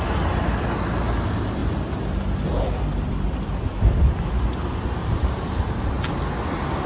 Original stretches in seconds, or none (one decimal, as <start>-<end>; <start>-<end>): 0.0-1.6; 2.1-2.5; 4.1-5.0; 5.9-6.9